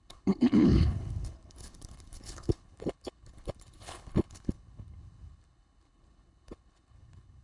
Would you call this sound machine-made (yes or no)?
yes